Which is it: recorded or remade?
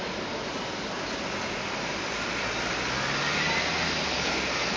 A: recorded